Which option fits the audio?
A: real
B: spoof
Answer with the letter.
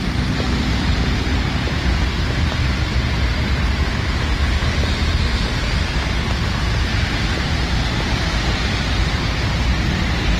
A